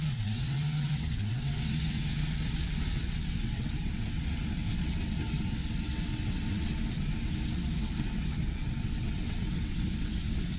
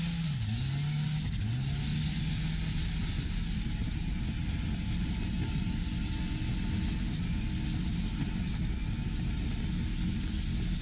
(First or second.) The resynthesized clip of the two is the first